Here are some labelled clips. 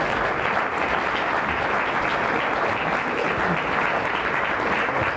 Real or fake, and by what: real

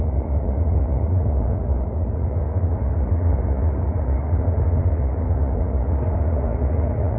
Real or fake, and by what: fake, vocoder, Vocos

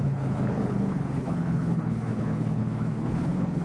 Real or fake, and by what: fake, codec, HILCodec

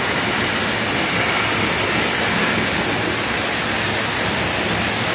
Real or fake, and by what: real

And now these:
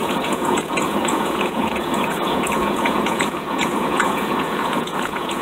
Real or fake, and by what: fake, vocoder, Vocos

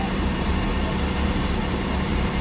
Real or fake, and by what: fake, vocoder, BigVGAN v2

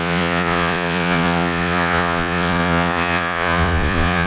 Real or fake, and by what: fake, vocoder, Vocos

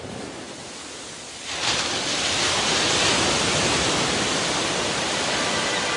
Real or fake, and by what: real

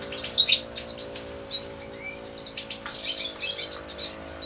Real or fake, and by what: real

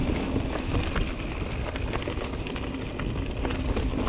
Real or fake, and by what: real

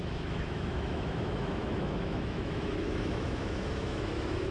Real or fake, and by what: fake, autoencoder, DAC-VAE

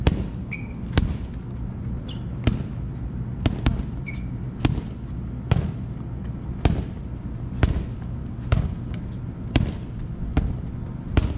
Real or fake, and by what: real